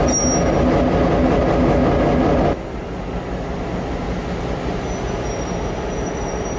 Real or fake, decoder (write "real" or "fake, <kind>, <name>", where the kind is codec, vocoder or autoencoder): real